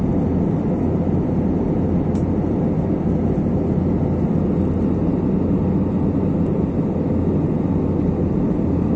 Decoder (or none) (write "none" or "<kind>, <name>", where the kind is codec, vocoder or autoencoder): none